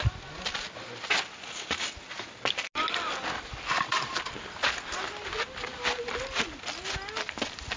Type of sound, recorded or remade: recorded